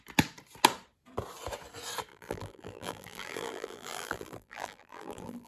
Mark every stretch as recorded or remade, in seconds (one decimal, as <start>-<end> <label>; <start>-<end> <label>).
0.0-2.1 recorded; 2.1-5.5 remade